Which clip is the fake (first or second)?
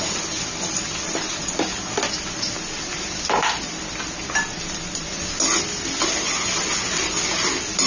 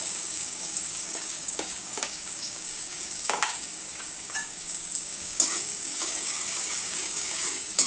second